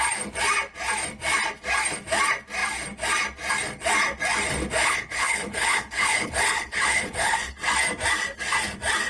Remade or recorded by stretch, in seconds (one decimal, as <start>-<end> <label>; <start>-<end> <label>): 0.0-4.8 recorded; 4.8-7.5 remade; 7.5-9.1 recorded